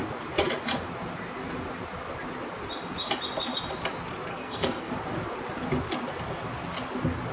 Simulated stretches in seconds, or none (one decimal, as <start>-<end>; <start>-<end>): 4.3-4.9